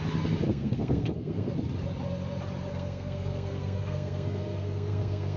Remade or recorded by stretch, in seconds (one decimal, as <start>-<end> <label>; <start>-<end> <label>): 0.0-0.5 recorded; 0.5-1.5 remade; 1.5-2.7 recorded; 2.7-5.4 remade